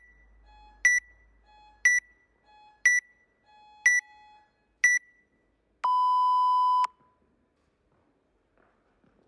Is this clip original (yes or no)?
yes